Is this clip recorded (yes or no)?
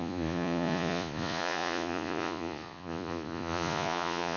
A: no